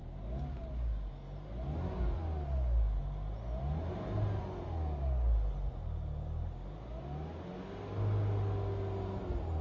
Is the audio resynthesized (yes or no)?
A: no